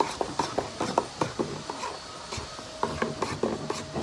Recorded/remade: recorded